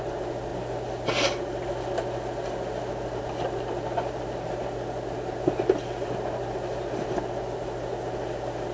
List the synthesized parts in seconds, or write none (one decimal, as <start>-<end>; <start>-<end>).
none